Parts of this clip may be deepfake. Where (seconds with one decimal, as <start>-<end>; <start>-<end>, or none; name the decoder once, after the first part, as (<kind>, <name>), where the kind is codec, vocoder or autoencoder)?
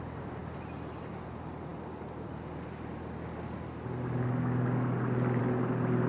none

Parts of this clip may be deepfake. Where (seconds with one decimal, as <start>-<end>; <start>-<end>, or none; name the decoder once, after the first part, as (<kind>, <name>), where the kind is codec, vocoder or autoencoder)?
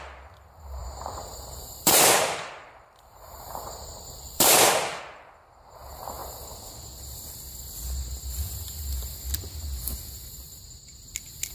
0.8-5.0 (vocoder, BigVGAN v2)